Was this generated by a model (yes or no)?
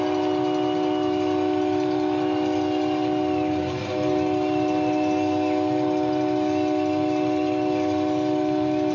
no